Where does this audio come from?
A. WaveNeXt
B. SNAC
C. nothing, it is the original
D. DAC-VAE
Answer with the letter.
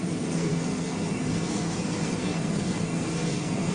B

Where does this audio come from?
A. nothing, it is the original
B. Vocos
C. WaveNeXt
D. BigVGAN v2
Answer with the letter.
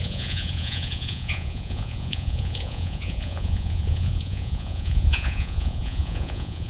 B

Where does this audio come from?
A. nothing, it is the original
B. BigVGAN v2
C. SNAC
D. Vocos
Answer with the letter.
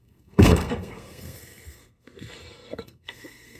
C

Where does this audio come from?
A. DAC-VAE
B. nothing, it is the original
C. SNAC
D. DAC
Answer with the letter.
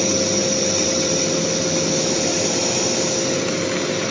B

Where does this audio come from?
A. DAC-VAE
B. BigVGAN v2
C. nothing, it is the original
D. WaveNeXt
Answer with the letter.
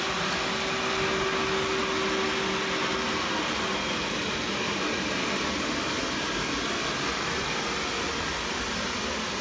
C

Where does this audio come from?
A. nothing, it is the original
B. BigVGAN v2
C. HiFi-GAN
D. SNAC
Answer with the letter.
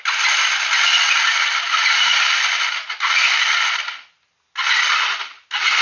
A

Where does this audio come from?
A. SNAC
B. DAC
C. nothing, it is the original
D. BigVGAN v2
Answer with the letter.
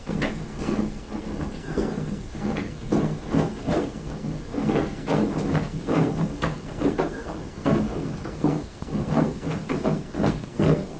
A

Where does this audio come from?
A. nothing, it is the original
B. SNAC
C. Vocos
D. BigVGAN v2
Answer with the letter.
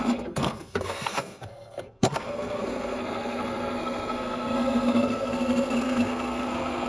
B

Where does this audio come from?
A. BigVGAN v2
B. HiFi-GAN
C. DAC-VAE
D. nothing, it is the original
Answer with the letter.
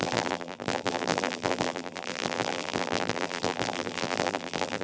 A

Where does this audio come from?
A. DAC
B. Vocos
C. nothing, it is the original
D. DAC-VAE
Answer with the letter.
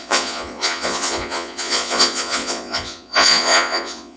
B